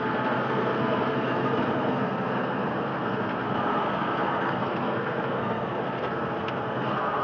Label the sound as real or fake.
fake